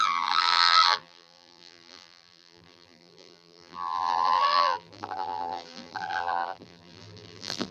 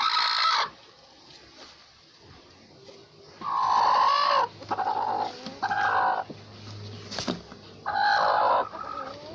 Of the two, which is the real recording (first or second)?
second